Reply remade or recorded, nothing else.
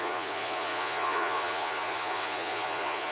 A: remade